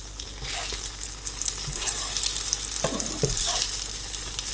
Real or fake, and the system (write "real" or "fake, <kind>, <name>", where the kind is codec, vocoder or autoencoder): real